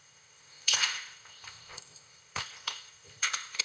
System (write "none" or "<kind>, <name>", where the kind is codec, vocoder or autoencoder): codec, ZipCodec